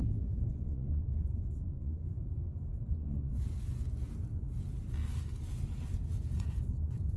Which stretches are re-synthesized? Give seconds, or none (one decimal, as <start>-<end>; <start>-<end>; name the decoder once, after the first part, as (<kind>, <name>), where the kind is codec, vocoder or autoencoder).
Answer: 0.5-2.0 (vocoder, Vocos); 2.9-4.0; 6.2-7.2